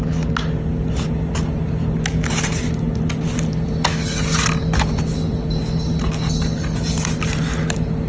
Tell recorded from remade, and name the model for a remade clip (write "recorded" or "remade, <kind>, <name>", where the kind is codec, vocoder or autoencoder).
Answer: recorded